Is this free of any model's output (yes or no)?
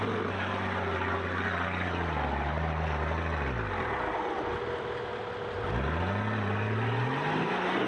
yes